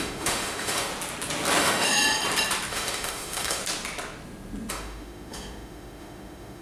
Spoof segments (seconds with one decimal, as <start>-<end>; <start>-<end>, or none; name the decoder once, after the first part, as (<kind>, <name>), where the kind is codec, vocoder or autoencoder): 0.0-0.9 (autoencoder, DAC-VAE); 1.6-2.0; 2.7-3.6; 4.7-6.6